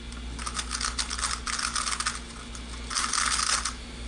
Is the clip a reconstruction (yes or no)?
no